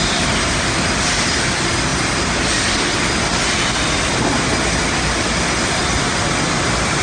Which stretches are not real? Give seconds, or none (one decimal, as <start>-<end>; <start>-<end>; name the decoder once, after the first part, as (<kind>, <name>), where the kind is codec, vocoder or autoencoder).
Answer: none